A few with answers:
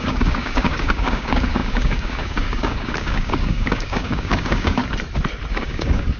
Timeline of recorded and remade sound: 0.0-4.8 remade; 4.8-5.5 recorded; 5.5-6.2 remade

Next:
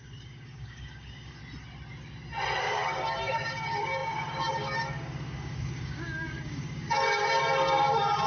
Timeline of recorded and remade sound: 0.0-1.4 remade; 1.4-2.6 recorded; 2.6-8.3 remade

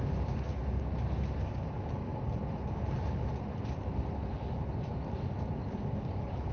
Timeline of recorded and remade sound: 0.0-0.5 remade; 0.5-1.4 recorded; 1.4-2.1 remade; 2.1-5.7 recorded; 5.7-6.5 remade

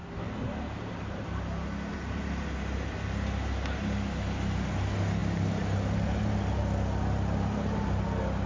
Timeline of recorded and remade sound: 0.0-8.5 recorded

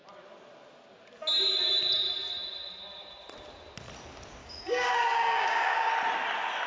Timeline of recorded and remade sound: 0.0-4.4 recorded; 4.4-5.9 remade; 5.9-6.7 recorded

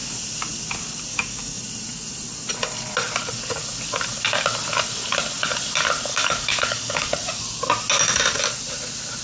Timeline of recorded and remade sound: 0.0-1.1 recorded; 1.1-1.6 remade; 1.6-6.1 recorded; 6.1-7.1 remade; 7.1-9.2 recorded